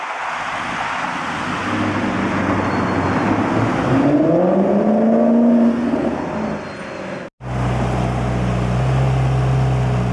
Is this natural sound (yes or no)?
yes